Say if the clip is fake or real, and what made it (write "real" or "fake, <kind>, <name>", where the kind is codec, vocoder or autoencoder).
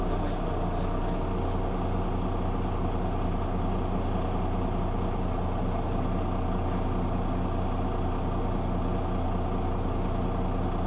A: real